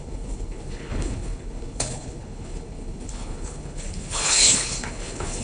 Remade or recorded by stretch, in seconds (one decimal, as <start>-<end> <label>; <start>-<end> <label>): 0.0-5.4 remade